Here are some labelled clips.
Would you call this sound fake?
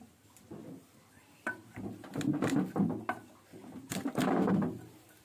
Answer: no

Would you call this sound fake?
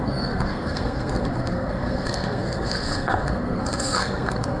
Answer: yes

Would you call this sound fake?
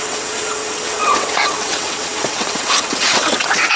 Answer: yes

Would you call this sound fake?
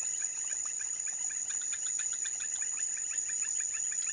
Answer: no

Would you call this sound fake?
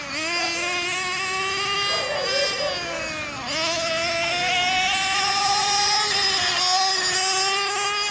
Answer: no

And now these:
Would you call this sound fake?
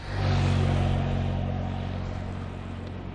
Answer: no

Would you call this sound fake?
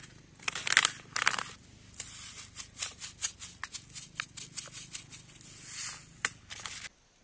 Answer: no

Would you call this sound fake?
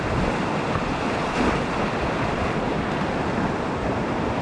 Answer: no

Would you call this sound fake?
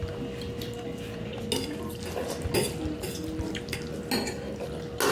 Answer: no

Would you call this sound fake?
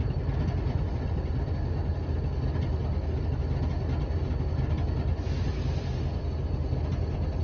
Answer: no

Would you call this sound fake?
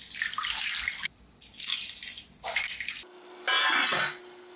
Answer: no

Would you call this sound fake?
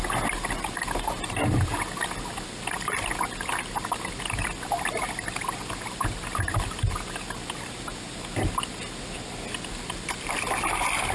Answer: no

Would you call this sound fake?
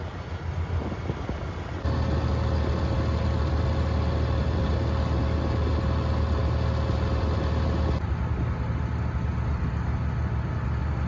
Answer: no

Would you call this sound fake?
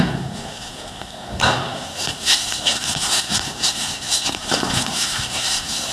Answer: yes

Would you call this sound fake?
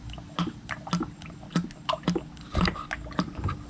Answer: no